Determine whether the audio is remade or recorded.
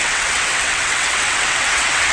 remade